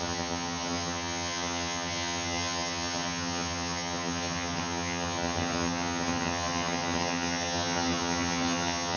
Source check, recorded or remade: remade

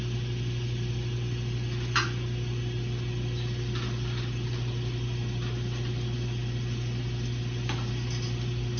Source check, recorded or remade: recorded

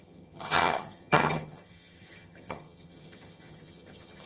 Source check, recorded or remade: remade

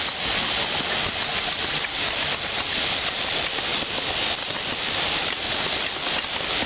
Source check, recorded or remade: recorded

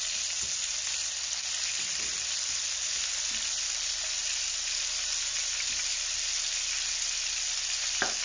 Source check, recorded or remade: recorded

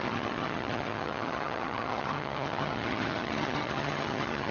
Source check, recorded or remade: remade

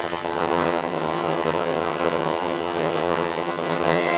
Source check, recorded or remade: remade